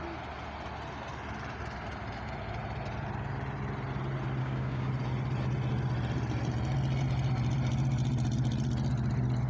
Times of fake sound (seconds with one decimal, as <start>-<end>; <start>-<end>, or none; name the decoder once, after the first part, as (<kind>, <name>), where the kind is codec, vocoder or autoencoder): 4.4-4.9 (codec, DAC)